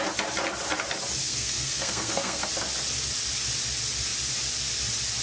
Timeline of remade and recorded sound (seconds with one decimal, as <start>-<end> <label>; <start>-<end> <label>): 0.0-1.2 recorded; 1.2-2.5 remade; 2.5-5.2 recorded